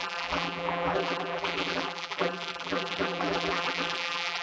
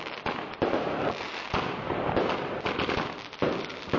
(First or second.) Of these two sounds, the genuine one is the second